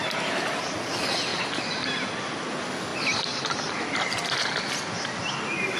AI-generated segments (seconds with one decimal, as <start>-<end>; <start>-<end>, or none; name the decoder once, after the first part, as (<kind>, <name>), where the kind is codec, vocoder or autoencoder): 2.9-3.9 (vocoder, BigVGAN v2)

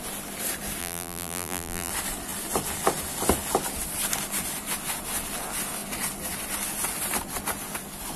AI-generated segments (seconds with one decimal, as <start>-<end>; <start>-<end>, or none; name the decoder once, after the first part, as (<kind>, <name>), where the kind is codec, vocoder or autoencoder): 0.8-1.9 (vocoder, BigVGAN v2)

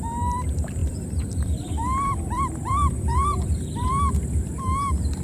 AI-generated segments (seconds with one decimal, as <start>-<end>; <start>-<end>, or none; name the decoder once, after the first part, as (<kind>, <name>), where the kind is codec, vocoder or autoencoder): 0.8-3.9 (vocoder, BigVGAN v2)

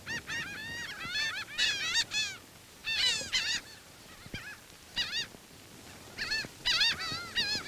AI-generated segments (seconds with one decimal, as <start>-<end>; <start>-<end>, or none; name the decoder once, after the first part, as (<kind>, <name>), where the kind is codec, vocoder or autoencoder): 2.8-4.4 (vocoder, BigVGAN v2)

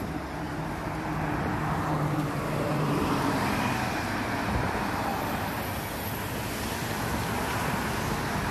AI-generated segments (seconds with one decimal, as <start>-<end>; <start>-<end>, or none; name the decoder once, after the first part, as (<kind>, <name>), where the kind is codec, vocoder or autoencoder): none